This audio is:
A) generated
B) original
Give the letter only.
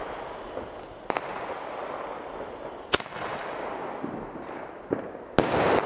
B